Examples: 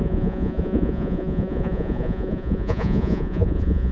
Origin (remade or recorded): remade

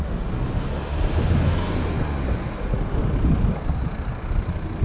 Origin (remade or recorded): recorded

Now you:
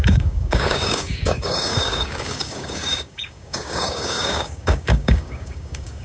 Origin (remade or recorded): remade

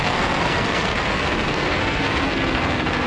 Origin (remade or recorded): remade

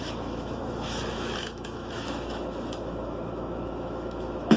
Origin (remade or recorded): remade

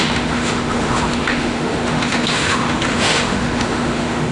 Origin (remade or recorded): remade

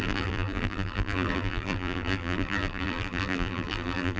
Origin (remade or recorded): remade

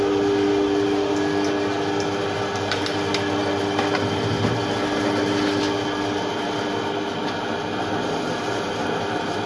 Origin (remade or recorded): recorded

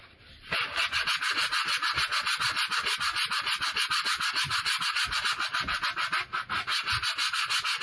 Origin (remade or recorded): recorded